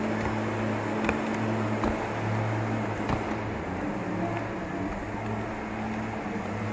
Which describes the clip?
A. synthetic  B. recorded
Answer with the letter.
B